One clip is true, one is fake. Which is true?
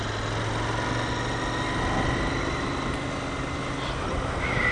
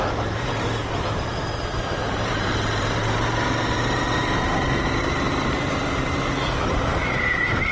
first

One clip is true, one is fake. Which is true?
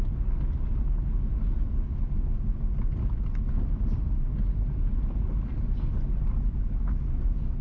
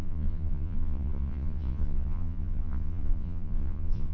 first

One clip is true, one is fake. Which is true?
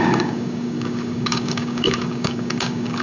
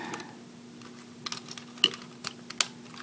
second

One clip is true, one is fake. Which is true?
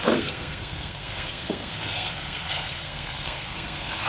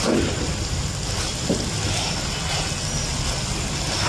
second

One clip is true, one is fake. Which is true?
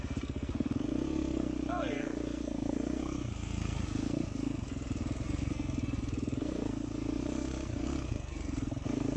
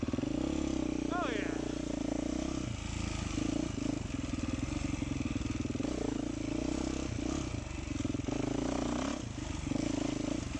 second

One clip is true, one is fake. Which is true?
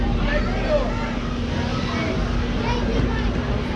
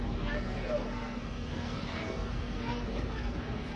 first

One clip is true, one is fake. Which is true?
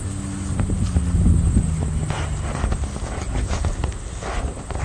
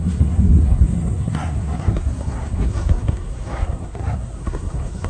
first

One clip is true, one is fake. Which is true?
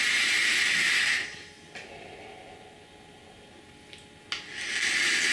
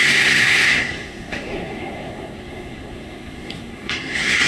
first